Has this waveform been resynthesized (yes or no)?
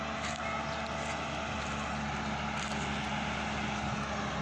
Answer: no